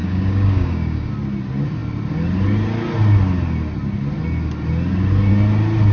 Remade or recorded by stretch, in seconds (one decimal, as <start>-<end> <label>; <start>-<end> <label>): 0.0-1.1 remade; 1.1-5.9 recorded